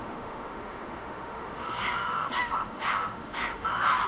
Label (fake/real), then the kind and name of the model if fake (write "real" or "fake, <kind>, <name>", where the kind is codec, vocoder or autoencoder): fake, autoencoder, DAC-VAE